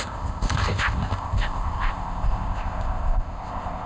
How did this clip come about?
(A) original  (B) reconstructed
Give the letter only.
B